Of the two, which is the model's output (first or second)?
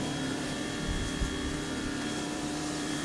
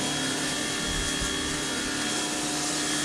first